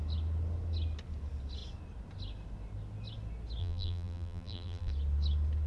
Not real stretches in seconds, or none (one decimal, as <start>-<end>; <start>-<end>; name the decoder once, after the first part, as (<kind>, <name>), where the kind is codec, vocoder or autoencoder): 3.6-4.9 (vocoder, BigVGAN v2)